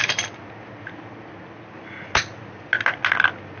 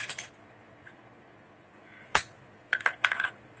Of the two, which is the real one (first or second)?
first